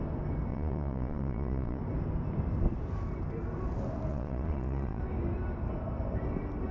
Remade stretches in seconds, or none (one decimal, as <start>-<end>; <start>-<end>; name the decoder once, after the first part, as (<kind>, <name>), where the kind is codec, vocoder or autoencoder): 0.5-1.8 (vocoder, Vocos); 4.1-5.0